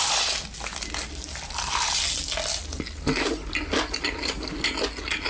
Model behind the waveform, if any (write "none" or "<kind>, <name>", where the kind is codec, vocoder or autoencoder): none